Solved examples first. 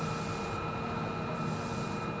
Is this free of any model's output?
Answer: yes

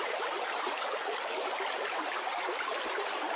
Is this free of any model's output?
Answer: yes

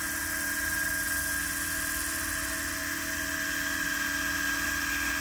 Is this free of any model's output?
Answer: yes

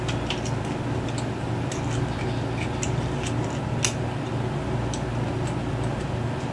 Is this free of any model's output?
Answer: yes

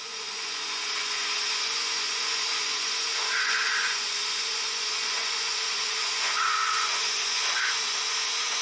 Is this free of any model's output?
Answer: no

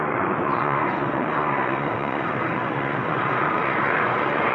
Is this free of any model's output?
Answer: no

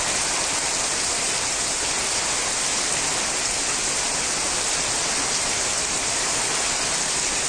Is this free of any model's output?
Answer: yes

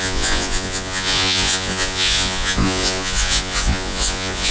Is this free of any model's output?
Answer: no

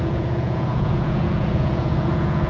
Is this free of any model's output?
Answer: no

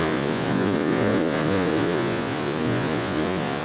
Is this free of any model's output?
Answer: no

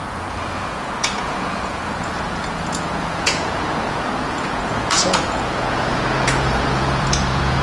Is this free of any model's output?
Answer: no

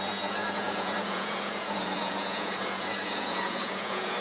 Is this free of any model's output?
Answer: no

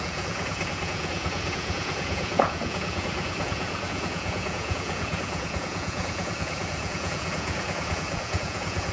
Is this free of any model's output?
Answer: no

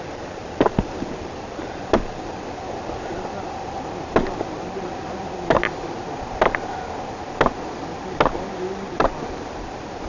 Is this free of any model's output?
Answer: yes